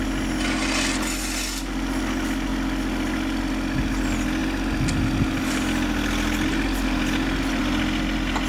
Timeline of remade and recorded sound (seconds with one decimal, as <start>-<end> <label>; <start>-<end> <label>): 0.0-8.5 recorded